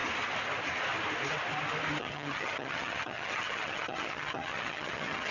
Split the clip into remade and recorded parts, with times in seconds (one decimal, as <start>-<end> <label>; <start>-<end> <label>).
0.0-2.0 recorded; 2.0-5.3 remade